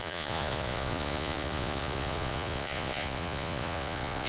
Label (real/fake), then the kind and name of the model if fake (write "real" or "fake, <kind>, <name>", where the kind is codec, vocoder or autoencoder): fake, vocoder, Vocos